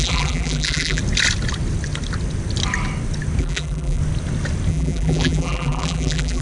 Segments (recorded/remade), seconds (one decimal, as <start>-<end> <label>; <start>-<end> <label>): 0.0-1.0 remade; 1.0-3.4 recorded; 3.4-4.0 remade; 4.0-4.7 recorded; 4.7-6.4 remade